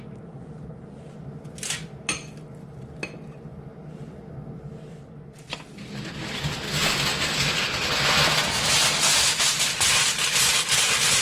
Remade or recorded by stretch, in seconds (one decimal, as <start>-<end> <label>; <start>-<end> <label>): 0.0-11.2 recorded